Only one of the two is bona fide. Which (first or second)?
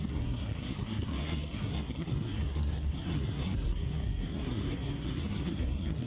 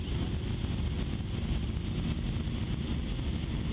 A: second